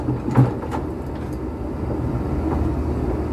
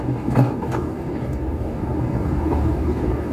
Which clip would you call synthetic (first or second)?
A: second